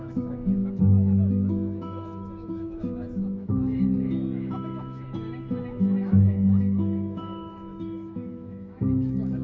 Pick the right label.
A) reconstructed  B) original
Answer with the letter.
A